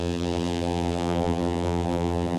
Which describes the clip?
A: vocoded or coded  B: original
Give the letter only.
A